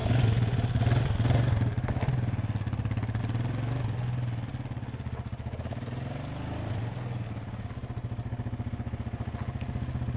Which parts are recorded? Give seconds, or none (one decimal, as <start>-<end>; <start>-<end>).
0.0-10.2